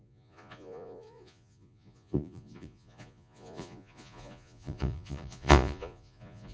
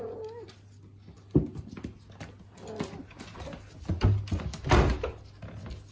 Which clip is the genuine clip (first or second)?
second